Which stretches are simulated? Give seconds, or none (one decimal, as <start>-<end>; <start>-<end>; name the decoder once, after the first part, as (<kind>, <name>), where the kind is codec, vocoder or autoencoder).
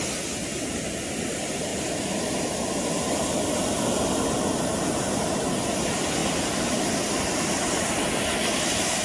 none